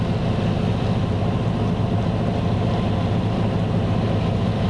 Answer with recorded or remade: recorded